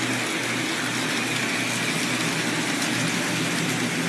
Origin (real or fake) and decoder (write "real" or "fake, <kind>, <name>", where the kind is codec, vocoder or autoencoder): real